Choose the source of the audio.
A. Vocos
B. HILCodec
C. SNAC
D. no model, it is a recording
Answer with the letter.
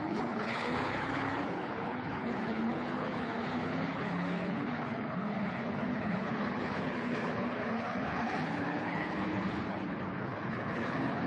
B